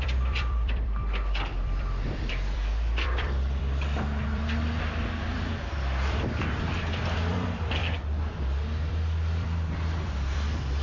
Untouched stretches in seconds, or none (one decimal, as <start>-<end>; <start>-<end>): 7.8-8.9

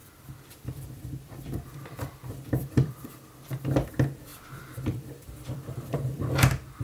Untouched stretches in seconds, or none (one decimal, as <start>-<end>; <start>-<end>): 3.9-4.3; 6.3-6.8

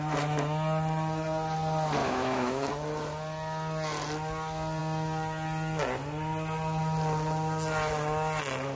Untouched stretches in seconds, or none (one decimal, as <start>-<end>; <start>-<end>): 0.0-2.0; 2.7-8.7

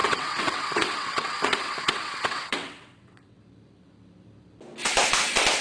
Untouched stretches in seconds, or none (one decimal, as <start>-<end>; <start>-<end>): 3.4-5.6

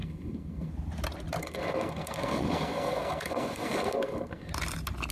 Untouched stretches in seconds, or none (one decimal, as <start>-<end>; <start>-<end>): 0.7-1.4; 4.5-5.1

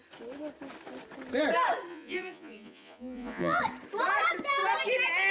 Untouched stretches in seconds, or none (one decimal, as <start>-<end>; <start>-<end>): 0.0-1.9; 3.6-5.3